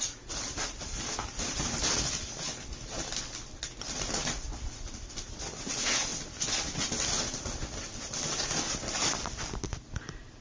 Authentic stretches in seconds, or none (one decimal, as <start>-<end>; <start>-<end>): 0.0-10.4